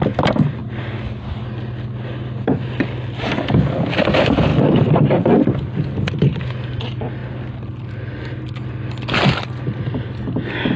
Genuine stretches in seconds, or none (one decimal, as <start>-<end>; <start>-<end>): 0.0-10.8